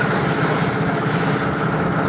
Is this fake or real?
real